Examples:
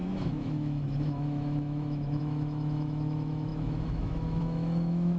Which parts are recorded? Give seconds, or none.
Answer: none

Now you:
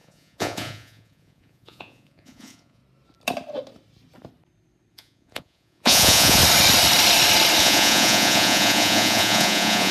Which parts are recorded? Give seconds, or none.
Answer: 2.8-4.9; 6.4-7.6

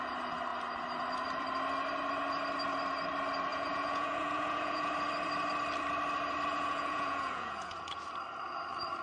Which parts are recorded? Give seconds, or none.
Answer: 0.0-3.5; 4.9-6.5; 8.1-9.0

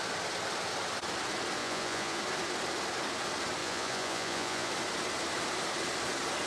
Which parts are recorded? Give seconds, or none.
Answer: 0.0-1.6; 2.2-3.6; 4.7-6.5

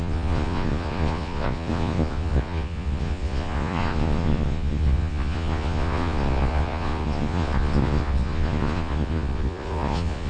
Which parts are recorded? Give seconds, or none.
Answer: none

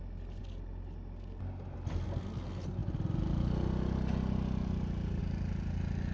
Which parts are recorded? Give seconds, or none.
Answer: 0.0-6.1

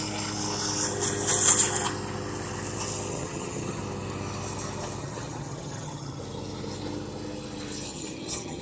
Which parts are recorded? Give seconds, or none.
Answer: 0.0-3.1; 3.8-5.0; 6.2-7.9

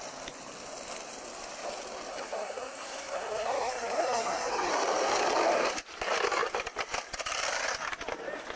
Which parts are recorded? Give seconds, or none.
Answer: 0.0-2.1; 4.7-8.6